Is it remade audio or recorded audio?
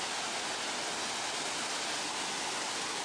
recorded